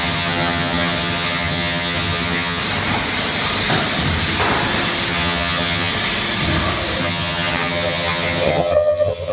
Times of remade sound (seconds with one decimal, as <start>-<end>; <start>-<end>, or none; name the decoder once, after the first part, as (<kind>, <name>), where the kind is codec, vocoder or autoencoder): 0.0-2.6 (vocoder, HiFi-GAN); 5.1-5.9; 7.0-9.3